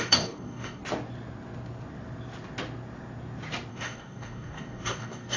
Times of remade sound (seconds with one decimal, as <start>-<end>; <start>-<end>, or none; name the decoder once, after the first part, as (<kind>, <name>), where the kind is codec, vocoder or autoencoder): 0.0-0.8 (codec, DAC); 3.7-5.4